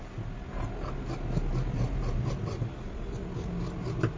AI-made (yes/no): no